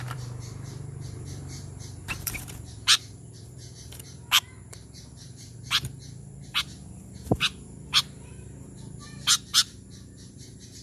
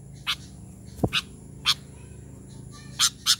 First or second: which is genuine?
second